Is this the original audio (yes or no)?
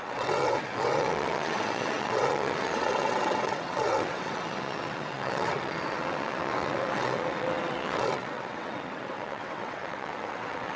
no